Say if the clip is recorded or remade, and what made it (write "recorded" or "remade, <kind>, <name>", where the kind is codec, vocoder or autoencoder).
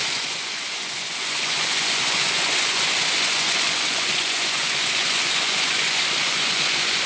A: remade, vocoder, Vocos